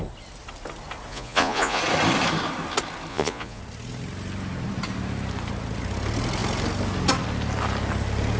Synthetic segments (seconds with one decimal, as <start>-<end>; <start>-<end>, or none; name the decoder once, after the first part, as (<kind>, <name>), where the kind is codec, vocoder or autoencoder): 1.1-1.8 (vocoder, Vocos); 3.1-3.6